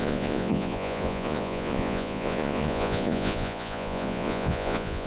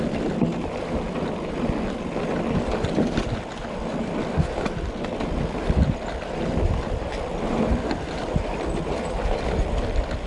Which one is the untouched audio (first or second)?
second